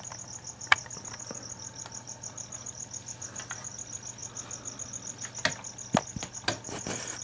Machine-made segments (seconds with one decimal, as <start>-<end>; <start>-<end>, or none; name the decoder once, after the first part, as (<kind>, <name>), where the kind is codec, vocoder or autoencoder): none